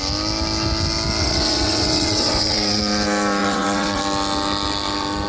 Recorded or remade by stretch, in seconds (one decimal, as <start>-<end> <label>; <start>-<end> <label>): 0.0-1.2 recorded; 1.2-2.8 remade; 2.8-3.4 recorded; 3.4-4.0 remade; 4.0-5.3 recorded